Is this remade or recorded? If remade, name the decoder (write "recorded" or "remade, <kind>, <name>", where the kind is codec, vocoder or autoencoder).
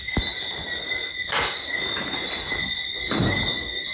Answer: recorded